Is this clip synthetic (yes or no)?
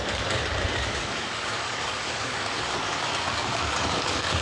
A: yes